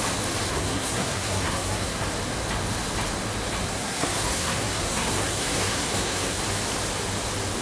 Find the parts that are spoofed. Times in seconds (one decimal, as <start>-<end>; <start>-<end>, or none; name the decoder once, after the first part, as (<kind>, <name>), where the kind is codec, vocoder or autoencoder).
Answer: 0.5-2.0 (codec, SNAC); 3.7-6.4